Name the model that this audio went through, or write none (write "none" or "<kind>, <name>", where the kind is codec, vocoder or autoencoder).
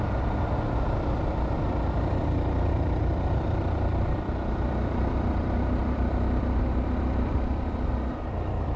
vocoder, BigVGAN v2